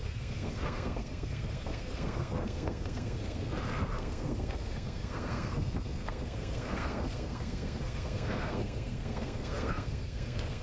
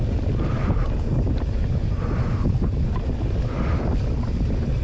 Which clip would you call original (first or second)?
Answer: second